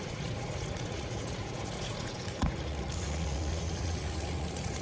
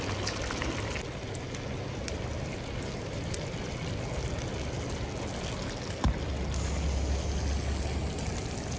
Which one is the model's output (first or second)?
first